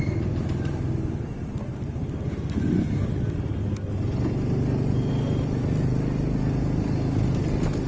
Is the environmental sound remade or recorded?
recorded